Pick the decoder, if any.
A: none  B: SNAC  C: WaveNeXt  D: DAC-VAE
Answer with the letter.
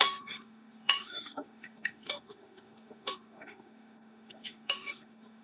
D